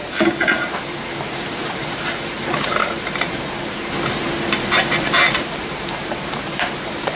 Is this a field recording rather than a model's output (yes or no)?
no